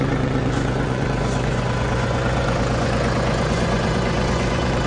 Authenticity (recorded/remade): remade